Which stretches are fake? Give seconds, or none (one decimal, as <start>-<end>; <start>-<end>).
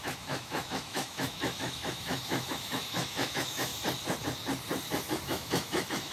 0.0-3.7; 5.2-6.1